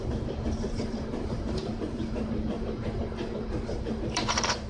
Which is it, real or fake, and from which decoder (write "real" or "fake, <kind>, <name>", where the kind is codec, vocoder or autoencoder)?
fake, vocoder, BigVGAN v2